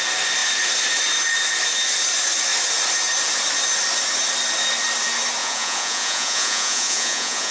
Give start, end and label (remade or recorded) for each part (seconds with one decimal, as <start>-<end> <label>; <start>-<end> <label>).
0.0-5.4 recorded; 5.4-7.5 remade